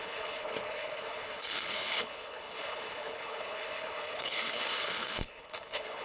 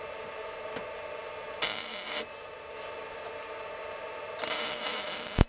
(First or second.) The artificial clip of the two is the first